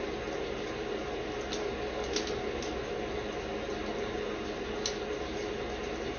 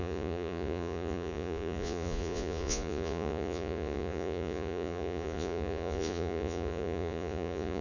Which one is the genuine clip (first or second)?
first